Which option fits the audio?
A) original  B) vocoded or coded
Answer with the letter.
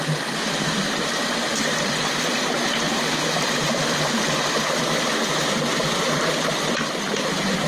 A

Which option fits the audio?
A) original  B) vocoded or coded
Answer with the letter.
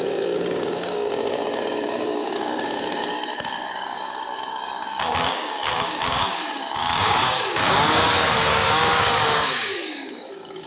B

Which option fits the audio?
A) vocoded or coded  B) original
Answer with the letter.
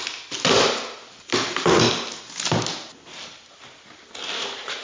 B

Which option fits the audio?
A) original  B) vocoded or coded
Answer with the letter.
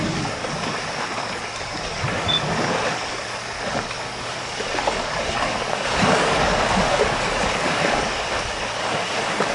B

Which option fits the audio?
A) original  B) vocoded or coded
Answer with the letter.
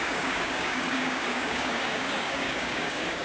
B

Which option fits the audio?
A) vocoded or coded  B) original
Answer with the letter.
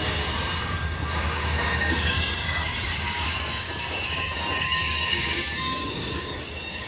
A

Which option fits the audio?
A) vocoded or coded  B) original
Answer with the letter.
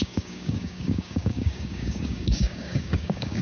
A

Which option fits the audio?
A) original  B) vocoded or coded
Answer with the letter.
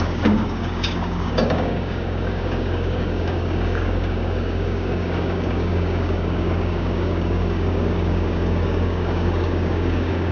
B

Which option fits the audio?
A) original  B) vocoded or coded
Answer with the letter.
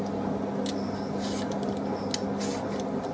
A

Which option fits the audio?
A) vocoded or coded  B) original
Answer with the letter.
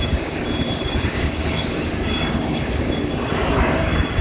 A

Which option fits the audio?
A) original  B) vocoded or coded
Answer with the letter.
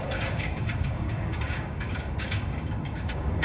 B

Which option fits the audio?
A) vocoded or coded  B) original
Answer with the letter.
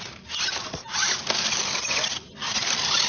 B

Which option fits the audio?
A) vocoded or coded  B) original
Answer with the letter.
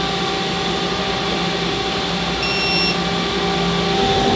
B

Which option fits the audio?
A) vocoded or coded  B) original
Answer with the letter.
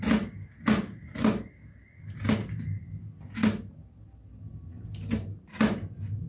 B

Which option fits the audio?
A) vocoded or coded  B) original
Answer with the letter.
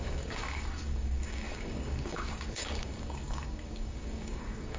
A